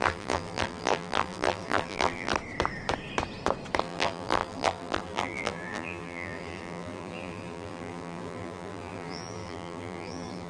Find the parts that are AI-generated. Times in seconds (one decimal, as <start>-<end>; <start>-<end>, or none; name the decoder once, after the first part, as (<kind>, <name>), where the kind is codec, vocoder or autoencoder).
0.0-2.3 (vocoder, BigVGAN v2); 3.8-10.5